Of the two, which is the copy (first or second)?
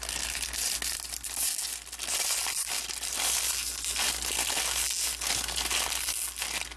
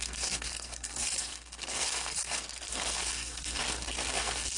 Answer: second